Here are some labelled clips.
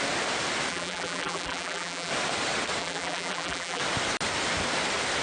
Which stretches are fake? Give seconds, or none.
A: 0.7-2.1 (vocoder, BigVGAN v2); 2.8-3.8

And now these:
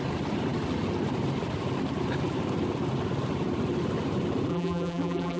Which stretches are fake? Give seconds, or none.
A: 4.5-5.4 (vocoder, BigVGAN v2)

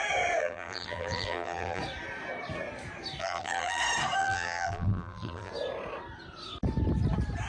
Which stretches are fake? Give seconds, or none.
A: 0.4-1.8 (vocoder, BigVGAN v2); 3.2-3.8; 4.2-5.5

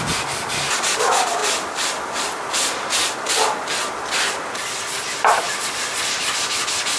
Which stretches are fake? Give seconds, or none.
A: 1.4-5.6 (vocoder, BigVGAN v2)

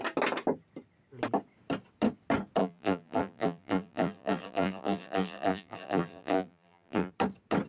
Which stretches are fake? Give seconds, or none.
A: 2.6-7.1 (vocoder, BigVGAN v2)